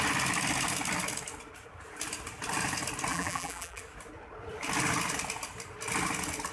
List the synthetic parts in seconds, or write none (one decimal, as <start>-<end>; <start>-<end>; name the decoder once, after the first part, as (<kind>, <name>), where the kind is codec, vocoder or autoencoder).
3.1-3.8 (vocoder, BigVGAN v2)